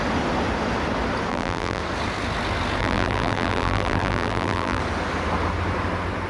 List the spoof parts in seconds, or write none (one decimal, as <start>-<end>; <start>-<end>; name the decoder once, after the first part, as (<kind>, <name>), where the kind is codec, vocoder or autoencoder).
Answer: 1.3-1.8 (vocoder, BigVGAN v2); 2.8-4.8